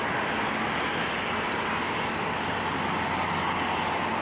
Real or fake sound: real